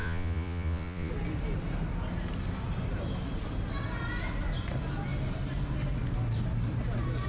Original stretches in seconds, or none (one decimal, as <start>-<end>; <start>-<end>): 1.1-7.3